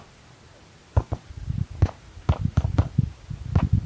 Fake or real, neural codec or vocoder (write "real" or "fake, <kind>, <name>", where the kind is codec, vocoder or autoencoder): real